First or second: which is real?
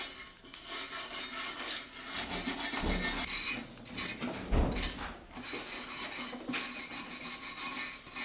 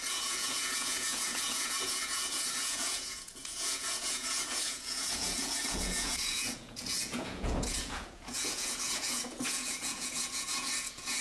first